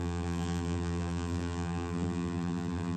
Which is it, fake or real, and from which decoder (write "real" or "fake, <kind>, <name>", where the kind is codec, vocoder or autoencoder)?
fake, vocoder, BigVGAN v2